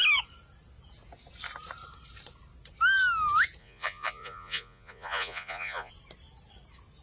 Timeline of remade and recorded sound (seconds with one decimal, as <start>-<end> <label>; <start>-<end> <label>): 0.0-3.6 recorded; 3.6-5.9 remade; 5.9-7.0 recorded